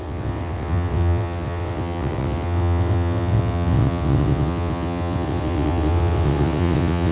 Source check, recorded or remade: remade